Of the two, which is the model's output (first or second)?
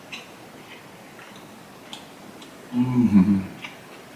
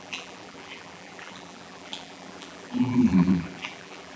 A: second